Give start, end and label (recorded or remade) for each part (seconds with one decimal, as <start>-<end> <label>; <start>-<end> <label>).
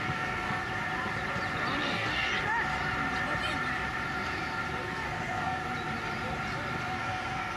0.0-0.6 remade; 0.6-1.8 recorded; 1.8-2.3 remade; 2.3-4.8 recorded; 4.8-5.6 remade; 5.6-6.9 recorded; 6.9-7.6 remade